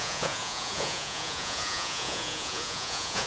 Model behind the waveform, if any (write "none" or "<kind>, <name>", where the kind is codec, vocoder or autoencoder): vocoder, Vocos